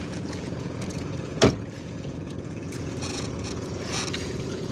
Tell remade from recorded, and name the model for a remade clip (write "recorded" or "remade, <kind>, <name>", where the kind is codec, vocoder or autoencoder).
remade, vocoder, Vocos